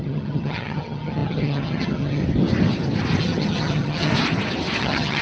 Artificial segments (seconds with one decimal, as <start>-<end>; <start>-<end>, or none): 0.0-2.2; 3.2-4.1; 4.8-5.2